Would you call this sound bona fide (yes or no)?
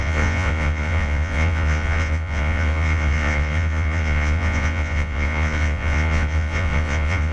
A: no